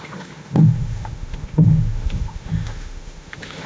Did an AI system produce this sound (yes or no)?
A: yes